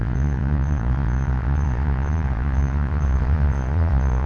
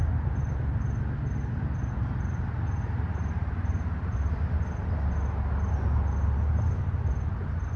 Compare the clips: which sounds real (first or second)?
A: second